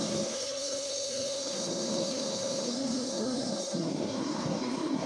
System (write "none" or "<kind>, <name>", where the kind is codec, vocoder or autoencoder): codec, SNAC